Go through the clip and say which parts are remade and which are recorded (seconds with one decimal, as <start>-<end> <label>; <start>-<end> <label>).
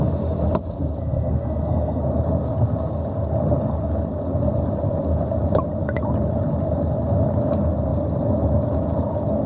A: 0.0-1.0 recorded; 1.0-2.0 remade; 2.0-9.5 recorded